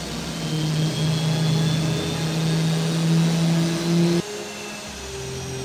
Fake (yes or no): no